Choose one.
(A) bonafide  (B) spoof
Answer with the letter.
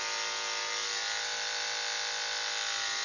A